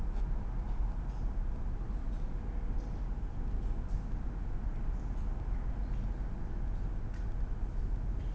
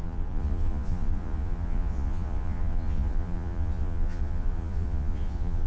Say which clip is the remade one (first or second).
second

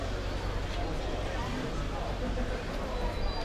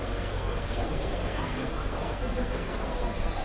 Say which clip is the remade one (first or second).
second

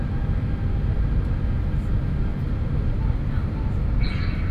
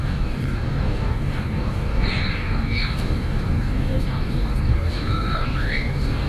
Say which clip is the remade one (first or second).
second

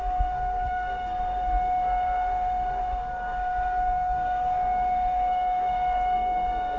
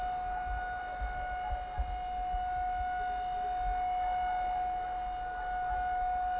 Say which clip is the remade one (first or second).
first